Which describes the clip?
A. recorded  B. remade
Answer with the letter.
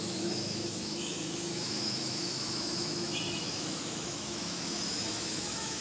B